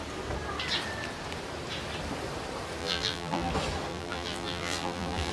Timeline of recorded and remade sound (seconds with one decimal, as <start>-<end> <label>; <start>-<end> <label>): 0.0-2.8 recorded; 2.8-3.5 remade; 3.5-3.9 recorded; 3.9-5.3 remade